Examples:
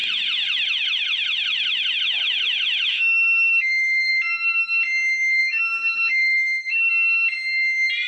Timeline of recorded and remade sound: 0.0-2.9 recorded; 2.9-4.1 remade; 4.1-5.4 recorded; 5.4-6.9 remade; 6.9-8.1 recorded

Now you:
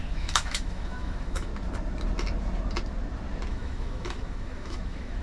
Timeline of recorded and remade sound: 0.0-1.5 remade; 1.5-3.5 recorded; 3.5-5.2 remade

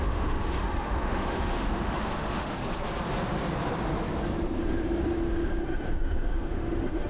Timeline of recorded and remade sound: 0.0-2.6 remade; 2.6-5.6 recorded; 5.6-7.1 remade

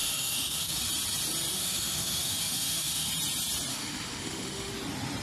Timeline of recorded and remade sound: 0.0-0.9 remade; 0.9-1.5 recorded; 1.5-3.1 remade; 3.1-3.7 recorded; 3.7-4.7 remade; 4.7-5.2 recorded

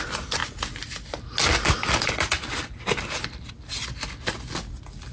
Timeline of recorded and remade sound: 0.0-5.1 recorded

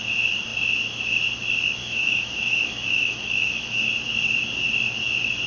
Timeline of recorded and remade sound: 0.0-1.8 recorded; 1.8-3.9 remade; 3.9-5.5 recorded

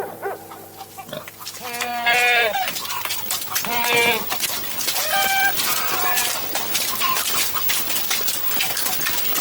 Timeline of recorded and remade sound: 0.0-9.4 recorded

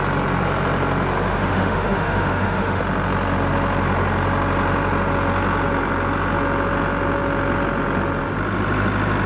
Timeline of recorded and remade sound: 0.0-1.3 recorded; 1.3-2.8 remade; 2.8-9.3 recorded